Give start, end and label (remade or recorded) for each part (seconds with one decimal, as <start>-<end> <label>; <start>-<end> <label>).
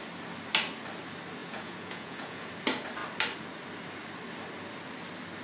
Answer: 0.0-1.4 recorded; 1.4-2.5 remade; 2.5-5.4 recorded